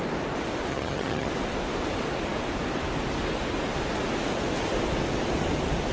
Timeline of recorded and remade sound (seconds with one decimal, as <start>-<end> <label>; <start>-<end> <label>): 0.0-0.7 recorded; 0.7-1.3 remade; 1.3-5.9 recorded